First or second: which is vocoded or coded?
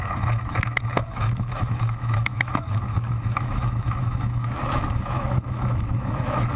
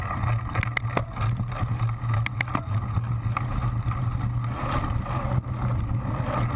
first